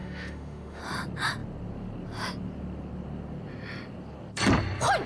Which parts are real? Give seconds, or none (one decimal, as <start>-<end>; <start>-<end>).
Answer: 0.8-5.1